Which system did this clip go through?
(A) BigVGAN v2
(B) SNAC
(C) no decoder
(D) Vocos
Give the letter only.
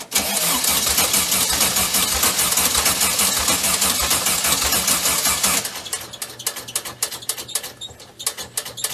C